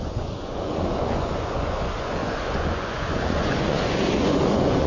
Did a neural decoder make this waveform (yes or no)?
yes